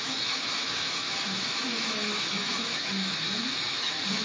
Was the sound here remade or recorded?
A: remade